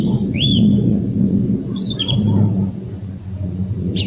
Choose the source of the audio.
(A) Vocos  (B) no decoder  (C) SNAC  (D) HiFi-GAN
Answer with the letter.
A